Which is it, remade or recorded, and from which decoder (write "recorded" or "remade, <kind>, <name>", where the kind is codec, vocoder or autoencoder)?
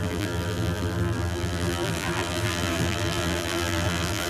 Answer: remade, vocoder, BigVGAN v2